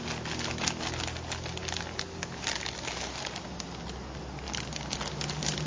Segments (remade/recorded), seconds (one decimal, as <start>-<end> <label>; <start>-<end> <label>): 0.0-5.7 recorded